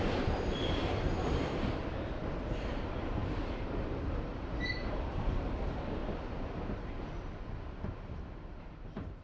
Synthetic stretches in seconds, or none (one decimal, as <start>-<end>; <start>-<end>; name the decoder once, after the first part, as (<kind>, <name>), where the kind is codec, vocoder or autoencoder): 0.0-1.8 (vocoder, BigVGAN v2); 2.4-6.0; 7.5-9.2